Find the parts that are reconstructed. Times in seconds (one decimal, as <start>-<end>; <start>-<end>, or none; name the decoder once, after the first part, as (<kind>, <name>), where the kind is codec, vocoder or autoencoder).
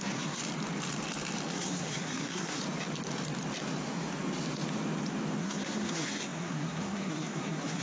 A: 0.0-0.4 (codec, SNAC); 1.5-2.6; 5.4-7.8